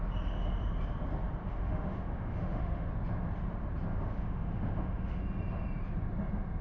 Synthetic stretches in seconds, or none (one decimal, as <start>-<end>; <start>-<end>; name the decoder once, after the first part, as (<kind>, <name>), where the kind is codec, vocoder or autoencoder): 1.4-2.9 (autoencoder, DAC-VAE); 3.9-5.2